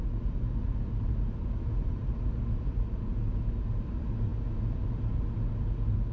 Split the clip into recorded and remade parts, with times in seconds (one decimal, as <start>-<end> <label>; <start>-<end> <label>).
0.0-6.1 recorded